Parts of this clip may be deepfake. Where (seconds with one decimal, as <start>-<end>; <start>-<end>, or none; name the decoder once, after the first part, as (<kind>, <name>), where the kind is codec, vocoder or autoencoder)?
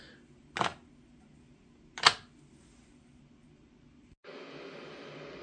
none